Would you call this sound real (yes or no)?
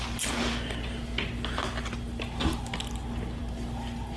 yes